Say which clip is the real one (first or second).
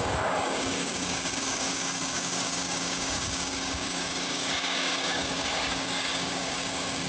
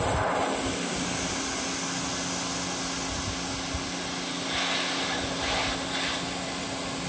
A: second